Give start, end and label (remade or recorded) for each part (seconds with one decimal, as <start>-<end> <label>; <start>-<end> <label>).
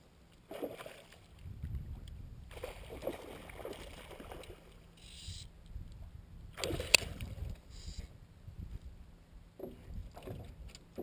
0.0-7.1 recorded; 7.1-7.7 remade; 7.7-11.0 recorded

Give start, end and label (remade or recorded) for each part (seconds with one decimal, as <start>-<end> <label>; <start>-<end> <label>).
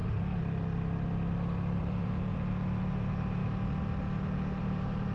0.0-1.8 recorded; 1.8-2.3 remade; 2.3-2.9 recorded; 2.9-3.4 remade; 3.4-4.6 recorded; 4.6-5.1 remade